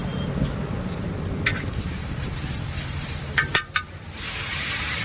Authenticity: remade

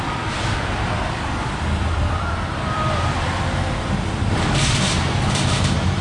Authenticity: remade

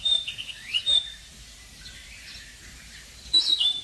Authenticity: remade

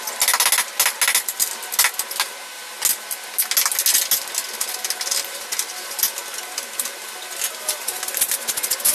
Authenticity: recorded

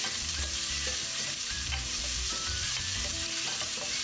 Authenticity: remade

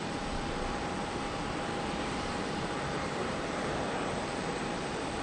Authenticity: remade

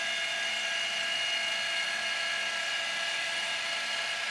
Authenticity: recorded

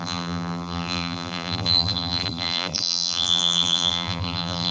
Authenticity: remade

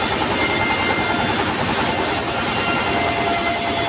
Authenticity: recorded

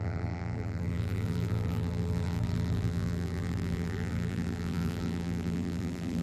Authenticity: remade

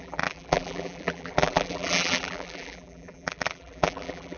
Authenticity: remade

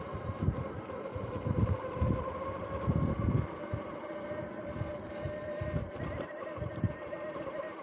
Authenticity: remade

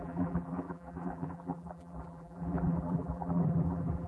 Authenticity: remade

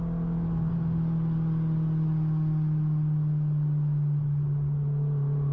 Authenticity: recorded